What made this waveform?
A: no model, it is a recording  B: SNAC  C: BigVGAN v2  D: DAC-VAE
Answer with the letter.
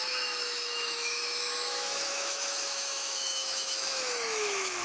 D